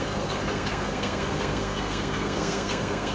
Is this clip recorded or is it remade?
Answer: remade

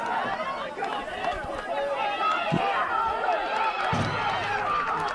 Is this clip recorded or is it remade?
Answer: recorded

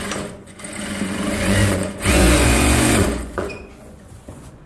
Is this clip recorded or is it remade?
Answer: remade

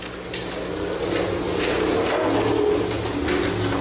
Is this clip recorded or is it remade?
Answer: recorded